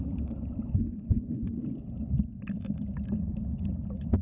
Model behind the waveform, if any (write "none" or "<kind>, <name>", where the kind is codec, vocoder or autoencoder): none